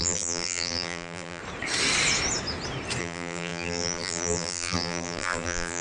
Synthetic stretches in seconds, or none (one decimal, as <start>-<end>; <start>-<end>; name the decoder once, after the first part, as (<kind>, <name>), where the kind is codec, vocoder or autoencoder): 0.0-1.4 (vocoder, BigVGAN v2); 3.0-5.8

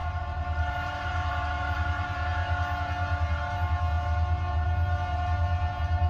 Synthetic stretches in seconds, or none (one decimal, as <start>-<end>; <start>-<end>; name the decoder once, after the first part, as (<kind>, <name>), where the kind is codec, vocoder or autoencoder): 0.0-2.3 (vocoder, BigVGAN v2)

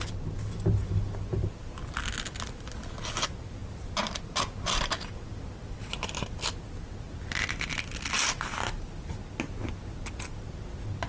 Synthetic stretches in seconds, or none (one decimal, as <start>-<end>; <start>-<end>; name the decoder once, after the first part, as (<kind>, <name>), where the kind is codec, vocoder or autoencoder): none

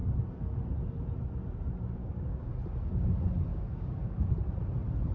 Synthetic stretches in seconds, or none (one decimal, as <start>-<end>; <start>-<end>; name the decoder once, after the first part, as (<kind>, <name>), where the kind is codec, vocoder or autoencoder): 2.0-2.5 (codec, DAC); 3.5-4.3

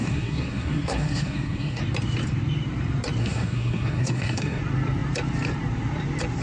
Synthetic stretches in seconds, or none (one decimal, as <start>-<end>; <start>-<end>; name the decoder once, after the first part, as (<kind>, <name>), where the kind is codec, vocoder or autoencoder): 0.0-1.8 (codec, SNAC); 3.2-4.6

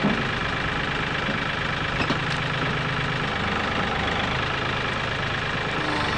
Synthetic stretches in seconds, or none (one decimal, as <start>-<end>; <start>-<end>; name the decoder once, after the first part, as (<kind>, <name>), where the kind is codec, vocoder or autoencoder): none

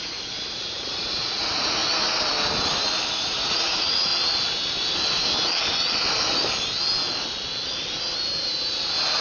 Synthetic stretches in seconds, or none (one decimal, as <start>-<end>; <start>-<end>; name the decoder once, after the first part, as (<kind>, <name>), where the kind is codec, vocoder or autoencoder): 0.0-1.8 (vocoder, Vocos); 3.1-4.1